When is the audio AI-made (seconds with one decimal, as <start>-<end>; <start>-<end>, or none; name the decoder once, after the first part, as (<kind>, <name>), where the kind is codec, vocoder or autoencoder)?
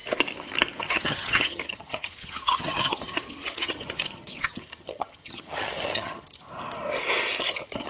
0.8-6.4 (vocoder, HiFi-GAN); 7.4-7.9